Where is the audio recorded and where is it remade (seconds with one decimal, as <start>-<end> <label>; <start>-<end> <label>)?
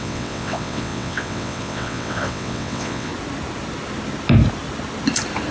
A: 0.0-3.1 remade; 3.1-5.5 recorded